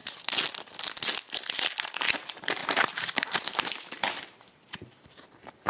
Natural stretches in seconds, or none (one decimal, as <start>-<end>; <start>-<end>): 0.0-1.5